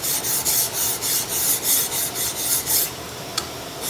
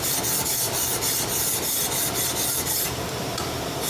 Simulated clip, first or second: second